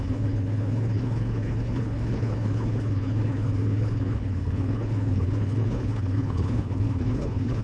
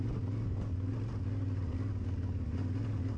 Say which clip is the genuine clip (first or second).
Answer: second